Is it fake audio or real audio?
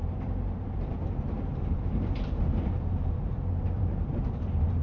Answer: fake